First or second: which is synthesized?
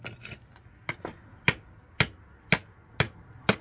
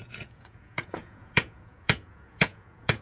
second